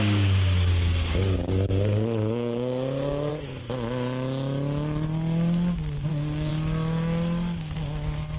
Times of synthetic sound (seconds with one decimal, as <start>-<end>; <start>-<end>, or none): 0.0-3.3; 6.1-6.5